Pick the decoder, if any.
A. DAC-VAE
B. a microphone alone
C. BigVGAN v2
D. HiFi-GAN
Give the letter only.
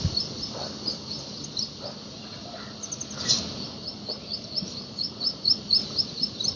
B